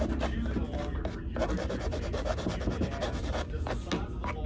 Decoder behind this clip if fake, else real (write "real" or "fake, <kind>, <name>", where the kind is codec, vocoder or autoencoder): real